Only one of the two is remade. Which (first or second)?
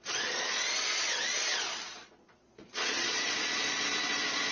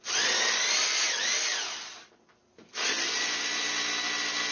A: first